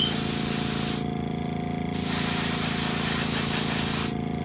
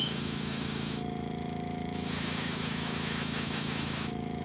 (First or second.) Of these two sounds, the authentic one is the first